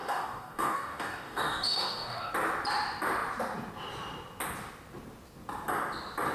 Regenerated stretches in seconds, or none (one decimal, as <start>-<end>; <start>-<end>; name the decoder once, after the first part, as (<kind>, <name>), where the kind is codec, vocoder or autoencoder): 0.0-2.3 (codec, DAC)